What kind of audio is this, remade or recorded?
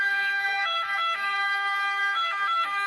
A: remade